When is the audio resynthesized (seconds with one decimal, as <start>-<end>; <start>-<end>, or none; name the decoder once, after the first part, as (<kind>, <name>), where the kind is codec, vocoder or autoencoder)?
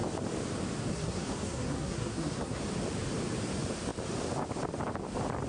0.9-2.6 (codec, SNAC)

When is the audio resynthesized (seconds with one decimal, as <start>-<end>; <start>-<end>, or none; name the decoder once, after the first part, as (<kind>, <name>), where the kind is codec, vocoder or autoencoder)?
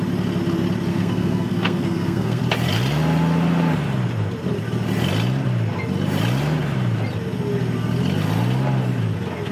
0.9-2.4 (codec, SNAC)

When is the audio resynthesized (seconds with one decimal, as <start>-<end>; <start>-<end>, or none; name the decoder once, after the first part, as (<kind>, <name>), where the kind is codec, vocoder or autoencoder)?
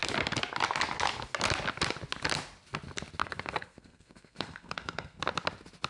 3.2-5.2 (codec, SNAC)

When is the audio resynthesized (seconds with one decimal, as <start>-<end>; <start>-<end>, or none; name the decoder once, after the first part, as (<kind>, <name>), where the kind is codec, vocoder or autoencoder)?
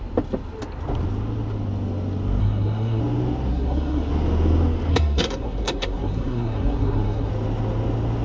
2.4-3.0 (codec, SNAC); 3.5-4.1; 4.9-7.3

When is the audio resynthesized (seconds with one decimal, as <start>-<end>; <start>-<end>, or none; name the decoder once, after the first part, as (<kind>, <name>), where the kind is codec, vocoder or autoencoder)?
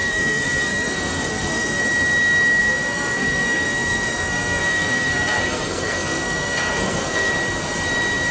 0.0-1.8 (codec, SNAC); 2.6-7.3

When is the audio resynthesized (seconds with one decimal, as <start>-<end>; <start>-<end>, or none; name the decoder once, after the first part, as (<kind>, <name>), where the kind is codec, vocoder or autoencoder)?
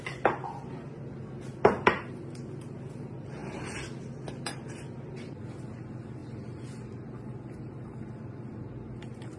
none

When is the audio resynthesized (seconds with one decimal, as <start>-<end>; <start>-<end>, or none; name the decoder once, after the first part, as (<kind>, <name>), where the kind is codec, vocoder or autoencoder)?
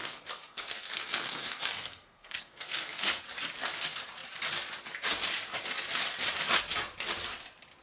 0.0-3.2 (codec, SNAC)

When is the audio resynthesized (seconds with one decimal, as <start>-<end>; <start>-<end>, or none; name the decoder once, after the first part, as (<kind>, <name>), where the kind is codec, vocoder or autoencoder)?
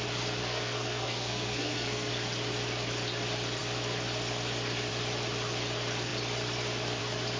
0.4-2.1 (codec, SNAC)